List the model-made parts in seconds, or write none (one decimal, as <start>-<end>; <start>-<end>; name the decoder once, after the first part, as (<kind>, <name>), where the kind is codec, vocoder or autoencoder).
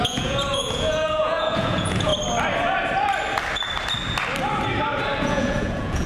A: 0.0-2.1 (vocoder, Vocos); 5.2-6.1